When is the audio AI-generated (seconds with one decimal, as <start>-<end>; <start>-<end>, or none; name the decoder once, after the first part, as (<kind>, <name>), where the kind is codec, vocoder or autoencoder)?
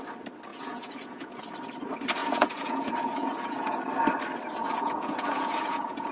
0.5-1.4 (vocoder, Vocos); 2.2-3.8; 4.6-6.1